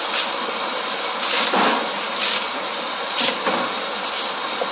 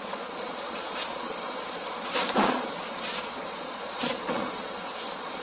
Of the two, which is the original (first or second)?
first